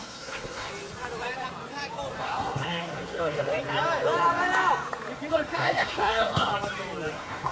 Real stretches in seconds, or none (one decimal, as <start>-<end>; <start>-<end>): 0.7-2.2; 3.5-5.3; 6.5-7.1